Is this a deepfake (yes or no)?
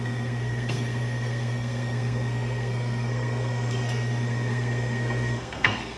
yes